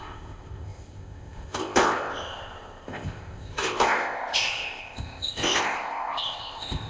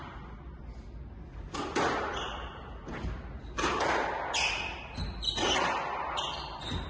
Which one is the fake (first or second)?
first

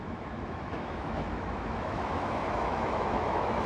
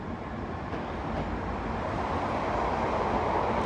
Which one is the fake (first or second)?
first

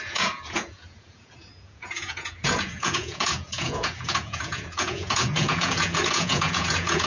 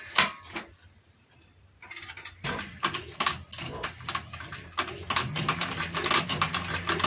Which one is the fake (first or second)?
first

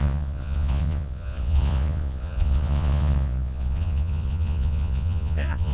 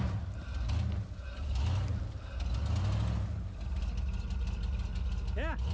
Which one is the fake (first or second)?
first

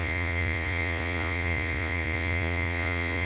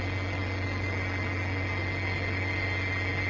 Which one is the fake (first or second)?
first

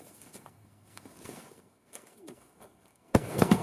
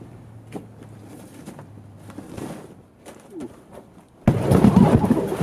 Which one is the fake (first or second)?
first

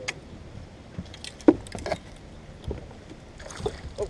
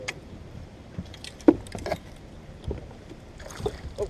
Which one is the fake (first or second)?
second